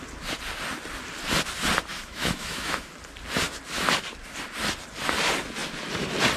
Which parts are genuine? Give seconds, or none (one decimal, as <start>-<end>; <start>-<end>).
0.0-1.9; 2.9-6.4